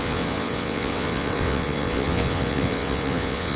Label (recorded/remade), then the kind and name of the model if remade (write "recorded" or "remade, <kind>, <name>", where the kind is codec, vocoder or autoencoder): remade, vocoder, WaveNeXt